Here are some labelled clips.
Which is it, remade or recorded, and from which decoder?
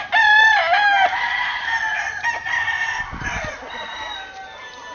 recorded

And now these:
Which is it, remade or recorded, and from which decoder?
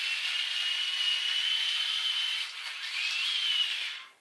recorded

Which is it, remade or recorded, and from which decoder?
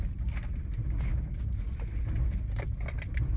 recorded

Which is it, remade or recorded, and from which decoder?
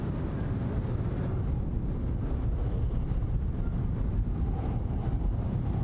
recorded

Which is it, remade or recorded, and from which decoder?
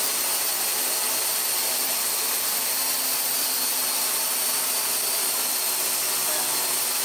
recorded